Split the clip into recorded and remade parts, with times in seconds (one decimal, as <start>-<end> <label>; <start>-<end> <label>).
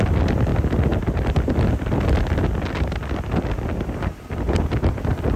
0.0-5.4 recorded